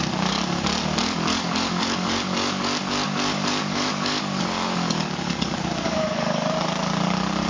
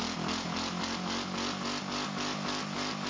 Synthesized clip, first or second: first